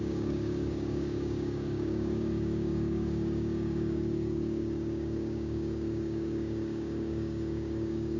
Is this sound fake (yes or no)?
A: yes